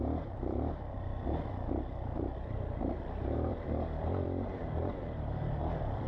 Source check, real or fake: fake